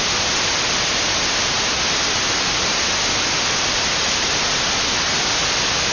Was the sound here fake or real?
real